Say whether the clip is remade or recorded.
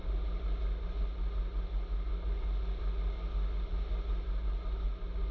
recorded